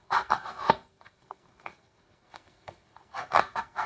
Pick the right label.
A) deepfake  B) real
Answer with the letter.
A